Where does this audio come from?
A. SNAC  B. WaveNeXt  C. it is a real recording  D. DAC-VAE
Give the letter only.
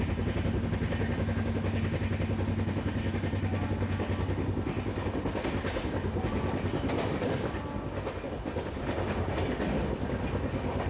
C